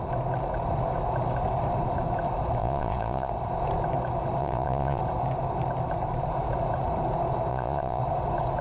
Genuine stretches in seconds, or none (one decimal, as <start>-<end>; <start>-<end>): 0.0-2.6; 3.3-4.4; 5.0-7.5; 8.0-8.6